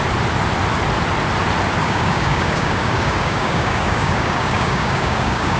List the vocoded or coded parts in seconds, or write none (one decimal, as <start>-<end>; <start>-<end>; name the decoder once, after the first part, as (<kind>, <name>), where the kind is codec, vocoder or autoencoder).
1.8-5.6 (codec, DAC)